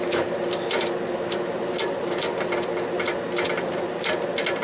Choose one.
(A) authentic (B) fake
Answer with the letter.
A